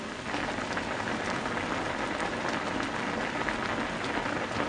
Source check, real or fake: real